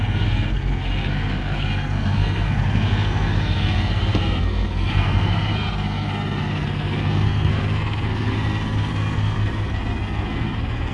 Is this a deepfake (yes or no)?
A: yes